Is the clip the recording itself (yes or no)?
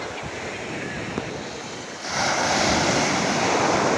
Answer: yes